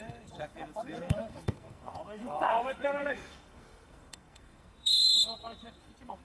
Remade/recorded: remade